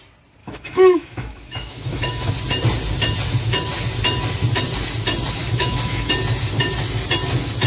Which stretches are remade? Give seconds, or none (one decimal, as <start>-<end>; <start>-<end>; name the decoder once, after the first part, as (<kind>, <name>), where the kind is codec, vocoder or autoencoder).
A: 0.4-2.3 (autoencoder, DAC-VAE); 5.4-6.1